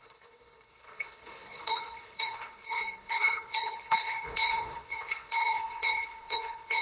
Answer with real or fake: fake